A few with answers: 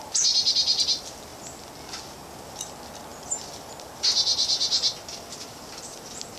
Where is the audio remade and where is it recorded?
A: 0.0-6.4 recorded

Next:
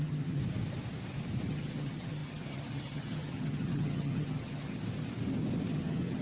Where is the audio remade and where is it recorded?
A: 0.0-0.4 remade; 0.4-1.5 recorded; 1.5-4.8 remade; 4.8-5.7 recorded; 5.7-6.2 remade

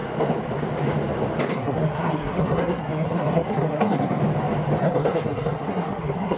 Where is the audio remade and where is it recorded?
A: 0.0-1.5 recorded; 1.5-4.2 remade; 4.2-4.8 recorded; 4.8-6.4 remade

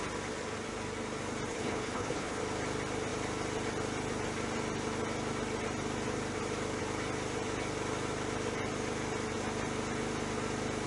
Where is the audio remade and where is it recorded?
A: 0.0-1.5 recorded; 1.5-2.4 remade; 2.4-10.9 recorded

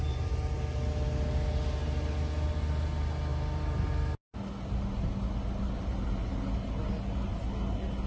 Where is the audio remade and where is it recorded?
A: 0.0-8.1 recorded

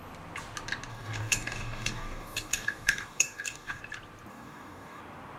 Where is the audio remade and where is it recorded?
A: 0.0-0.9 recorded; 0.9-3.8 remade; 3.8-4.3 recorded; 4.3-5.0 remade; 5.0-5.4 recorded

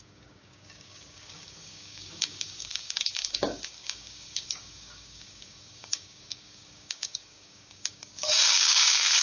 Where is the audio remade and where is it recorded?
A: 0.0-9.2 remade